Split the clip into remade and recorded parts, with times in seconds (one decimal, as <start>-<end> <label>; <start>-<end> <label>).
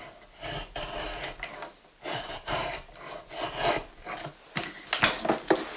0.0-5.8 recorded